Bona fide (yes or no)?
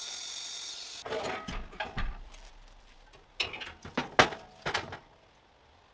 yes